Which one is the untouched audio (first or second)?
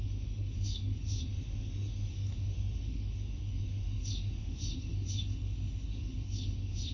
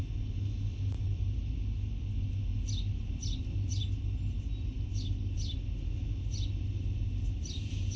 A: second